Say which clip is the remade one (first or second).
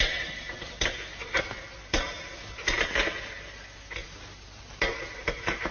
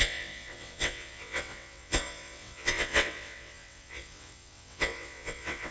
second